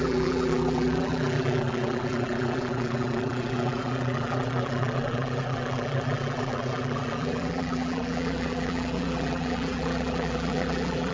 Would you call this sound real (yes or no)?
no